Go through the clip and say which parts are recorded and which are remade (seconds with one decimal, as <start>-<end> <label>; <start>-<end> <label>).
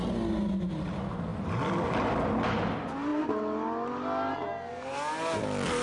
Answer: 0.0-5.8 recorded